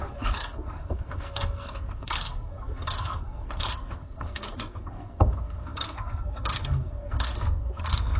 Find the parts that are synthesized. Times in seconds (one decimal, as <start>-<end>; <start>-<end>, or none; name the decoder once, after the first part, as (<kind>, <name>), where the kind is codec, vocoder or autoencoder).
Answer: 0.0-8.2 (codec, SNAC)